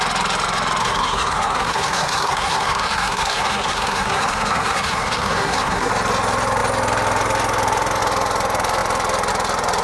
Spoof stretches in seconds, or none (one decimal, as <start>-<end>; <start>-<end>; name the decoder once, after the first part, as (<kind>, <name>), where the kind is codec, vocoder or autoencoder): 0.8-5.9 (codec, SNAC)